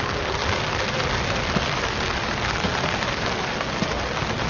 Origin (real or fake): real